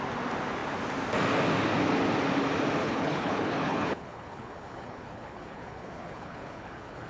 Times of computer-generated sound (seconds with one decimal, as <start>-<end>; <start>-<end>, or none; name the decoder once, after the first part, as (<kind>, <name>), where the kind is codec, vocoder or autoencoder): 2.8-7.1 (codec, HILCodec)